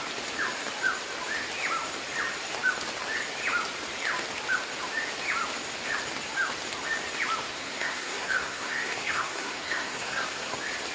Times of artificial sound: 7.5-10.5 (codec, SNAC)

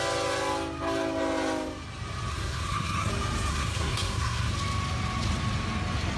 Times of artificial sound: 2.3-3.1 (codec, SNAC); 3.5-4.5

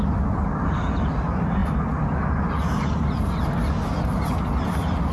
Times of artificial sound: none

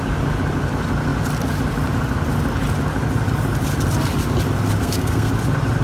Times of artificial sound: 4.8-5.3 (codec, SNAC)

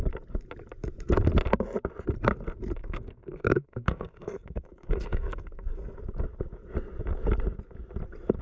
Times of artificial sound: 2.8-6.0 (codec, SNAC)

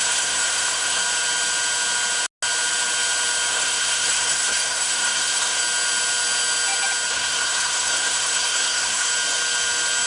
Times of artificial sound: 0.0-1.0 (codec, SNAC); 3.5-5.6; 7.1-9.1

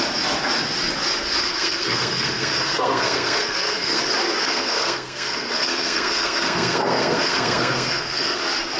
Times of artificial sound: 1.4-4.0 (codec, SNAC); 4.4-8.4

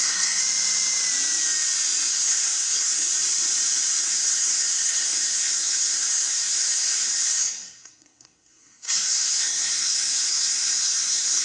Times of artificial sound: 0.0-0.4 (codec, SNAC); 2.1-3.1; 4.0-11.4